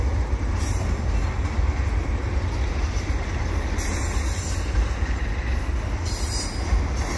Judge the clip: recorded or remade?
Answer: recorded